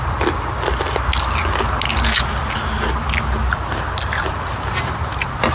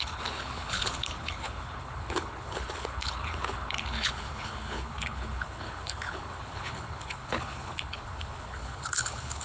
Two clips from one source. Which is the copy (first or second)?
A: second